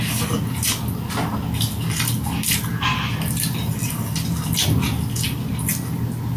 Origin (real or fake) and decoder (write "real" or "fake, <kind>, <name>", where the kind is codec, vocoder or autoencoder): real